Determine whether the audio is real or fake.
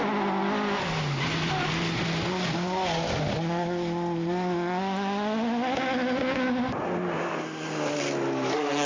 real